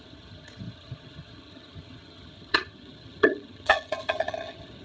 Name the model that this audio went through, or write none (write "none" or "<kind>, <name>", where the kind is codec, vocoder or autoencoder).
vocoder, HiFi-GAN